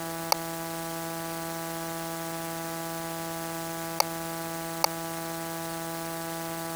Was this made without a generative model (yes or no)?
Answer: yes